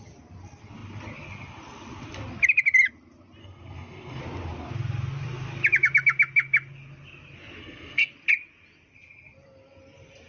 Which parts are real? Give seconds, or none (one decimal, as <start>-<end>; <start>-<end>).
0.0-3.4; 4.2-7.6; 8.1-10.3